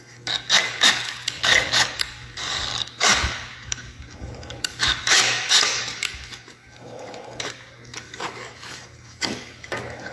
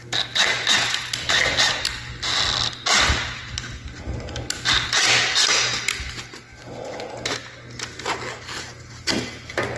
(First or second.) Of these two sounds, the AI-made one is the first